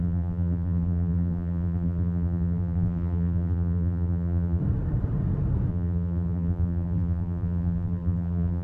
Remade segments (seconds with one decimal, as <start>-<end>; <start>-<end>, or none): 0.0-4.6; 5.7-8.6